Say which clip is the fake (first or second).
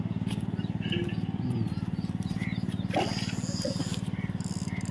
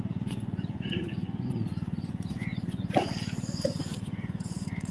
second